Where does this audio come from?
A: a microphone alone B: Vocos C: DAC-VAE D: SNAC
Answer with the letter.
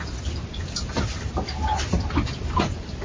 A